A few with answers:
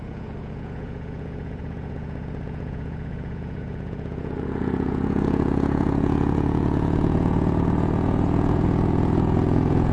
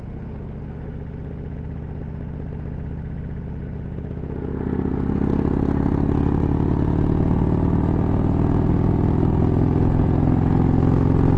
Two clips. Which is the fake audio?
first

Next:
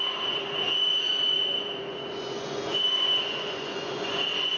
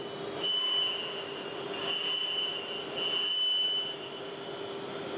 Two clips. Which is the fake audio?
first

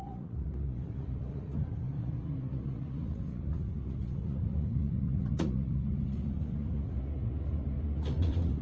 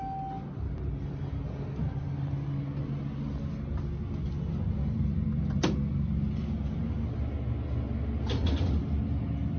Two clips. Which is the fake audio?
first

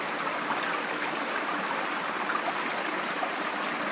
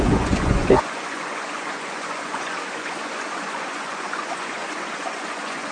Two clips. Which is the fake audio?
second